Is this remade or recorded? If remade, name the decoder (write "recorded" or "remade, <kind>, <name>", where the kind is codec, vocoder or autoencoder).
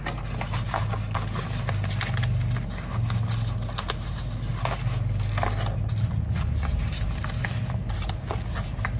recorded